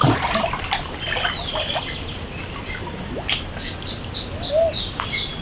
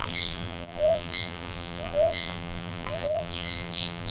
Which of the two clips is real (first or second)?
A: first